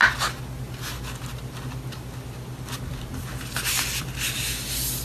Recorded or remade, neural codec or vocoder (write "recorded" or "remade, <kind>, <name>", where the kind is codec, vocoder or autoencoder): recorded